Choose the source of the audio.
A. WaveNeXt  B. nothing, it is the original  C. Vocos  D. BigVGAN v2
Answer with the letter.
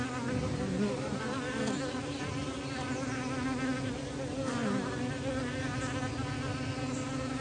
B